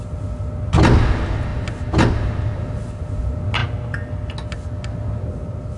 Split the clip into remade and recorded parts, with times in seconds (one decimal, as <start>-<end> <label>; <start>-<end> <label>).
0.0-5.8 recorded